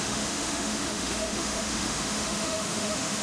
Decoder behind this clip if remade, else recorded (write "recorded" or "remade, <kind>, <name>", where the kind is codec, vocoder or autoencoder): remade, autoencoder, DAC-VAE